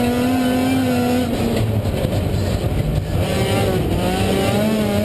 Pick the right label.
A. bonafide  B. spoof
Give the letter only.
A